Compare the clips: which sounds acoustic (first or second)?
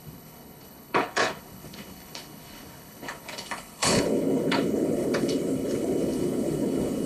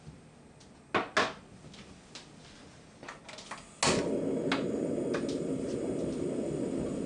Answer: second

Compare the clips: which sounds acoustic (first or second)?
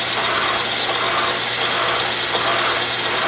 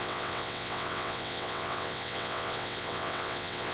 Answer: first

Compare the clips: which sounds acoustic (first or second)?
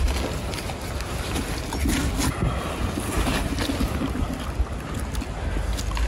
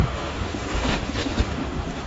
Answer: first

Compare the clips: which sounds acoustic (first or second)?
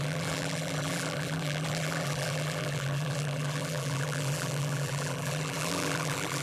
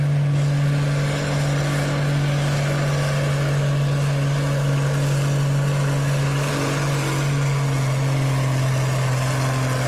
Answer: second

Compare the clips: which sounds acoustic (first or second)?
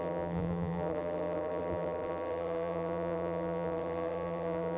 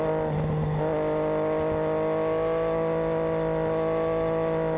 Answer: second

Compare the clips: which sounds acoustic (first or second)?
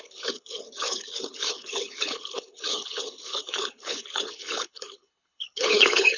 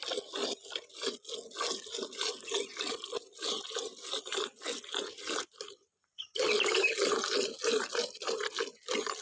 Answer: second